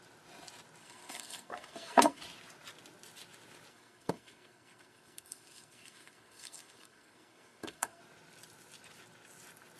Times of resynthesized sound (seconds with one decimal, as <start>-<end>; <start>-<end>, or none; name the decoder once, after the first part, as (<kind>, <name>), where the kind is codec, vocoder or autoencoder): 0.8-2.2 (codec, SNAC); 3.7-8.0